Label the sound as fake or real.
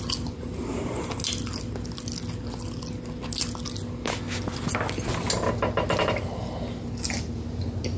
real